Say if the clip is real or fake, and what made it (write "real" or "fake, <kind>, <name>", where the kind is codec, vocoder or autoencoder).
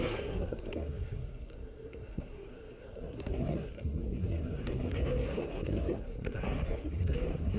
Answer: fake, codec, SNAC